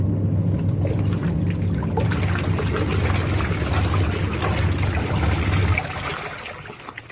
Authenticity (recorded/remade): recorded